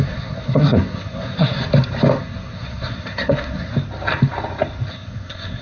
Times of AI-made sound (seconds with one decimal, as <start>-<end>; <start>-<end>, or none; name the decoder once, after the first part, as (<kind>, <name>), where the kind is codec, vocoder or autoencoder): 0.0-1.6 (codec, SNAC); 2.2-3.7; 4.9-5.6